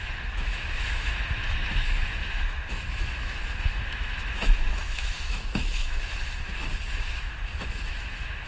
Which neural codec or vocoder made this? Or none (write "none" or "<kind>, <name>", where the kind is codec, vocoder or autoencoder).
autoencoder, DAC-VAE